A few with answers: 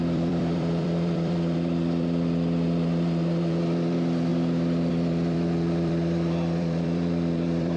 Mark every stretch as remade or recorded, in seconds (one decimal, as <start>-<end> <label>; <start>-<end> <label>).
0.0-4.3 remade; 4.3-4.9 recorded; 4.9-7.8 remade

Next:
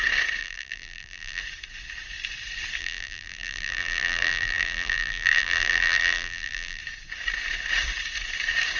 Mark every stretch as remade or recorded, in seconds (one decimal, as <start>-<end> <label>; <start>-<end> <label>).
0.0-0.4 recorded; 0.4-1.4 remade; 1.4-2.8 recorded; 2.8-6.8 remade; 6.8-8.8 recorded

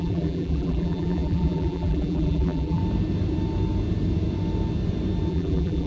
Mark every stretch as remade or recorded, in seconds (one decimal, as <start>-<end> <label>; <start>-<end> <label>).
0.0-2.8 remade; 2.8-5.3 recorded; 5.3-5.9 remade